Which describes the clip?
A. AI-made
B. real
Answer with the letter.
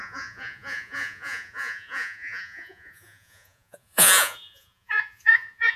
A